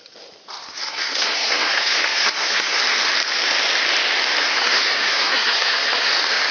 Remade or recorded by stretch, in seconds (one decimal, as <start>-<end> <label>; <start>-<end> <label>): 0.0-0.8 recorded; 0.8-2.8 remade; 2.8-4.5 recorded; 4.5-6.1 remade; 6.1-6.5 recorded